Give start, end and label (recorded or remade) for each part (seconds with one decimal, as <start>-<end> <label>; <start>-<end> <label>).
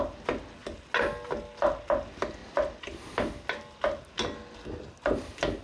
0.0-5.6 recorded